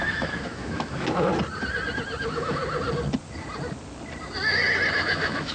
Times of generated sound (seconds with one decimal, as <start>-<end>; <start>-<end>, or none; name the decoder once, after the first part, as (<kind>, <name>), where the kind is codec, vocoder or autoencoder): 0.0-1.3 (autoencoder, DAC-VAE); 2.2-2.6; 4.9-5.5